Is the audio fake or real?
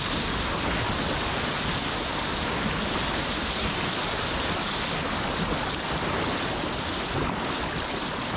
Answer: real